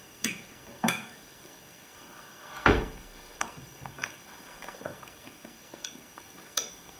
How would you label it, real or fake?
fake